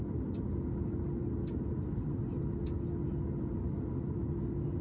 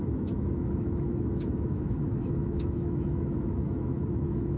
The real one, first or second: first